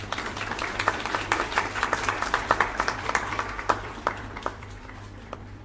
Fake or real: fake